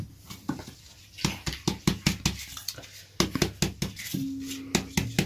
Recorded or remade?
recorded